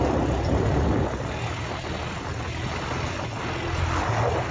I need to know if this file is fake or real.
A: real